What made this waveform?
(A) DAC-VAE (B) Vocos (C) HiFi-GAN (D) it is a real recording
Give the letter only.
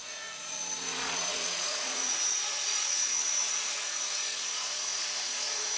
B